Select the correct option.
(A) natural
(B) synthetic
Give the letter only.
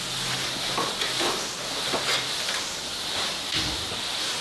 A